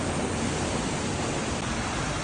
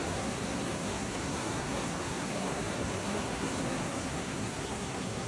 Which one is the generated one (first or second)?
second